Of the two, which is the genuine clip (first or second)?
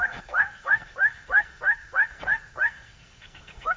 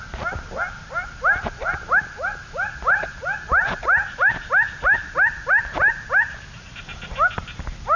second